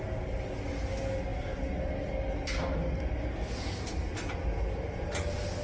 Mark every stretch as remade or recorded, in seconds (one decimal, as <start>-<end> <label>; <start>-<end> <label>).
0.0-5.6 recorded